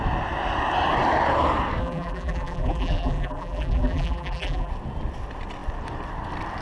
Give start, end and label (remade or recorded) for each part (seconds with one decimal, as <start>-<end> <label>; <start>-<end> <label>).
0.0-1.8 recorded; 1.8-4.7 remade; 4.7-6.6 recorded